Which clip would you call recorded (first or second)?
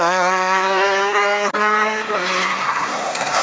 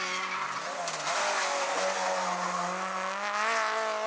second